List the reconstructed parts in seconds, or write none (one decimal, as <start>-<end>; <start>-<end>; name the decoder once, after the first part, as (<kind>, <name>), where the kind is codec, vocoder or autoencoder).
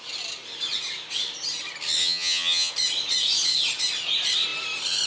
2.0-2.7 (vocoder, HiFi-GAN)